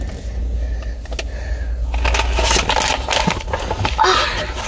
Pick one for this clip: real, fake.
real